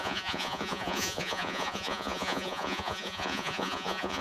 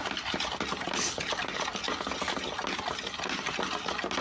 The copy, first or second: first